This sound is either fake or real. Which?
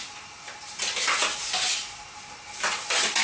real